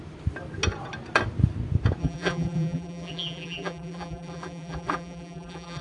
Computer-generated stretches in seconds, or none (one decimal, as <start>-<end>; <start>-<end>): 2.0-5.8